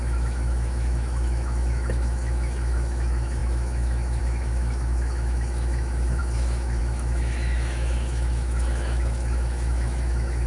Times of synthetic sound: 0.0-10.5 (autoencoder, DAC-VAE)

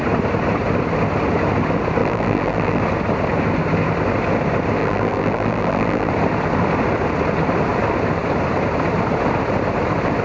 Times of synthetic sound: 2.0-2.8 (vocoder, BigVGAN v2); 4.8-6.1